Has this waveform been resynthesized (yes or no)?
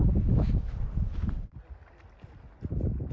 no